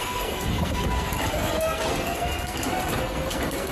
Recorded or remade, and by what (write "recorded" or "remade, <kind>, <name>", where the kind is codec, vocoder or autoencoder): remade, codec, SNAC